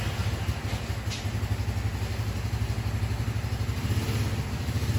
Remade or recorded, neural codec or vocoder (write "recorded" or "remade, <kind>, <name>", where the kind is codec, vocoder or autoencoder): recorded